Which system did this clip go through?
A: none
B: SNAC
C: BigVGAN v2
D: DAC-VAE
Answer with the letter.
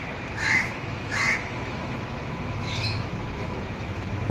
D